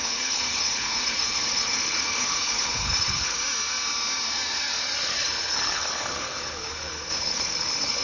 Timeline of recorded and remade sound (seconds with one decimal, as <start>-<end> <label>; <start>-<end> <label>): 0.0-3.4 remade; 3.4-5.0 recorded; 5.0-8.0 remade